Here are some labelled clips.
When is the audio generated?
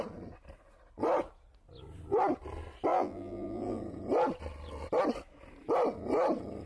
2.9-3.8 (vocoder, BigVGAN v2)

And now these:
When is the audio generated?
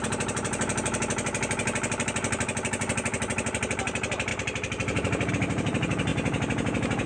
0.0-6.1 (vocoder, BigVGAN v2)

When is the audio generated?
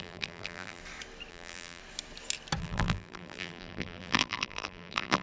0.0-0.8 (vocoder, BigVGAN v2); 1.3-1.8; 2.6-5.2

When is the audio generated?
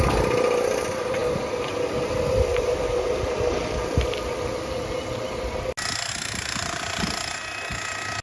none